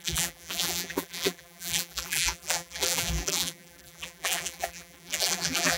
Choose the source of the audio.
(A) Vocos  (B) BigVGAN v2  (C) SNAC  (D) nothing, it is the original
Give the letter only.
B